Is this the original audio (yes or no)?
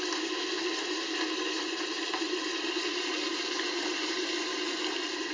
yes